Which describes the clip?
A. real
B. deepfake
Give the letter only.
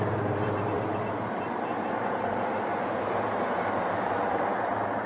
B